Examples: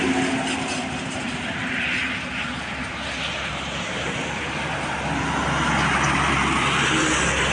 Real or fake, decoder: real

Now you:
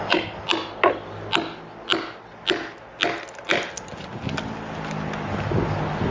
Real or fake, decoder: real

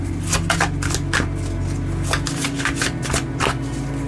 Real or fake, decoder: real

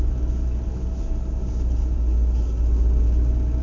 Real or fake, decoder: real